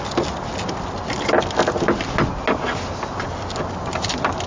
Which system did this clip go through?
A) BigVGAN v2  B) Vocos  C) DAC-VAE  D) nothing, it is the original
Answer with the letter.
D